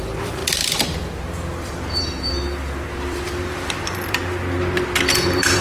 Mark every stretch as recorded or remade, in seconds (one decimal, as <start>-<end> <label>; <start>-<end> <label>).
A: 0.0-4.2 remade; 4.2-5.0 recorded; 5.0-5.6 remade